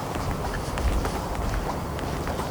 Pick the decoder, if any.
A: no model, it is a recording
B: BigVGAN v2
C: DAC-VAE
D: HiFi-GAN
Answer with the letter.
A